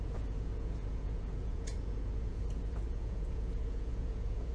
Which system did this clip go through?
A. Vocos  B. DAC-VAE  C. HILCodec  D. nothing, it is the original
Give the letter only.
A